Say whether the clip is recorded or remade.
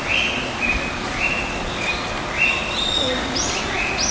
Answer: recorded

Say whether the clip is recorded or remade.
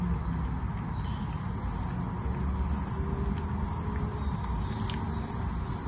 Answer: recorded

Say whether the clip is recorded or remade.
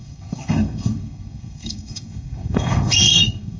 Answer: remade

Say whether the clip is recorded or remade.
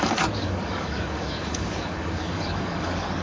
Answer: remade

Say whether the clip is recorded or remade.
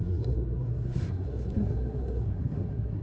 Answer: remade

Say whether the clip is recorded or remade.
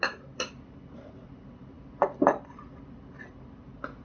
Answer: recorded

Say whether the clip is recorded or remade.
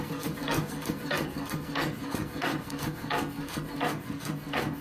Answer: remade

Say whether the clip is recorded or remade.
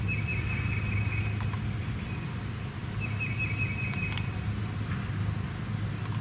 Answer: recorded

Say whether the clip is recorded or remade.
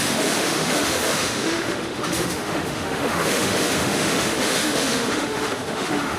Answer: remade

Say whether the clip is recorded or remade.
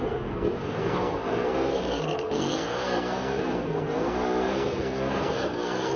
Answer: remade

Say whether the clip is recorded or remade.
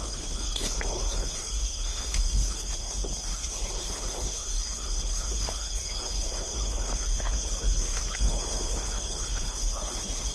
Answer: remade